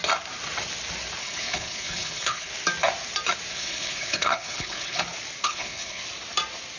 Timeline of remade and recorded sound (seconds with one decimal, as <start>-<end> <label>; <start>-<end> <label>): 0.0-1.2 recorded; 1.2-2.5 remade; 2.5-3.5 recorded; 3.5-5.0 remade; 5.0-5.4 recorded; 5.4-6.0 remade; 6.0-6.8 recorded